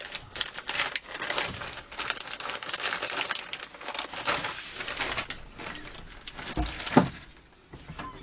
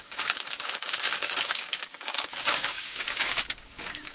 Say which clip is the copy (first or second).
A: second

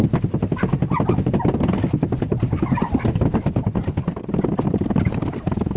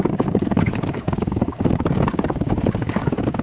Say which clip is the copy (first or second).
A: second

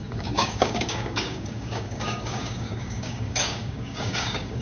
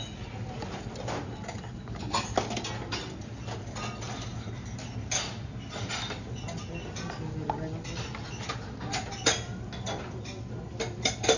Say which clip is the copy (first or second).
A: first